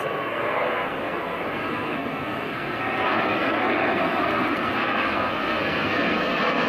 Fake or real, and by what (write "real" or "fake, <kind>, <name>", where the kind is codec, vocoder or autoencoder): fake, codec, SNAC